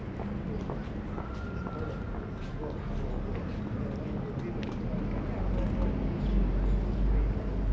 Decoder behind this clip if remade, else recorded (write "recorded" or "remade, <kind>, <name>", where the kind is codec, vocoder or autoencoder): recorded